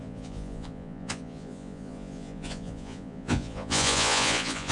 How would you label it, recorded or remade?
remade